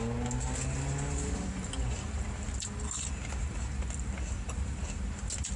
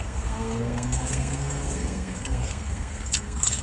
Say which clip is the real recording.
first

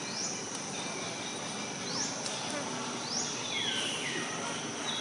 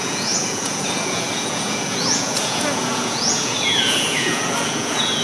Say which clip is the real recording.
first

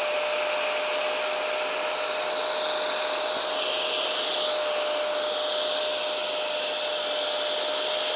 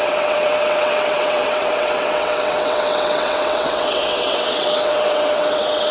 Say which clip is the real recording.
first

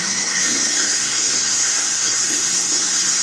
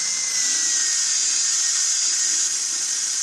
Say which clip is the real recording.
second